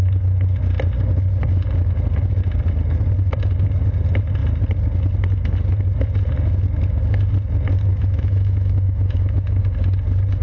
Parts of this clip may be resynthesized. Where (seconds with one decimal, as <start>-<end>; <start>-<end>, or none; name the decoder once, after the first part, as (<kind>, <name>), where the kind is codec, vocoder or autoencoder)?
7.9-9.6 (autoencoder, DAC-VAE)